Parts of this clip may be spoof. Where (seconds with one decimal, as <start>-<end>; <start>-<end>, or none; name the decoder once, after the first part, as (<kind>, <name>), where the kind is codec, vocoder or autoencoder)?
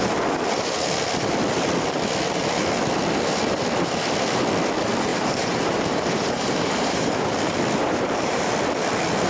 5.1-7.3 (vocoder, BigVGAN v2); 7.8-8.5